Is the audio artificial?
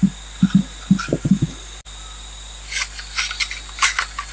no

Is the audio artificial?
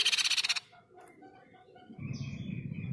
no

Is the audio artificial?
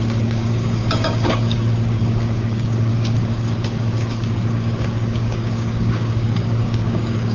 yes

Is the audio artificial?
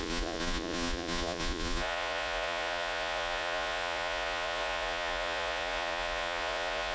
yes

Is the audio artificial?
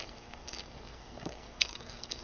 yes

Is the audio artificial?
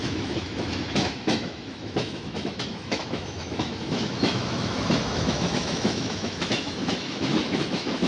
yes